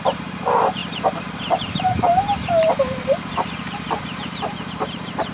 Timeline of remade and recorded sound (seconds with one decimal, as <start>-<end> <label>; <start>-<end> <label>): 0.0-5.3 remade